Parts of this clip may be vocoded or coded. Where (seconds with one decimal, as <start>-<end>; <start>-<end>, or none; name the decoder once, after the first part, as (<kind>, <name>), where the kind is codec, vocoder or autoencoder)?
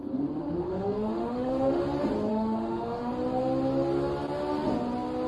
0.4-1.8 (autoencoder, DAC-VAE); 2.3-3.1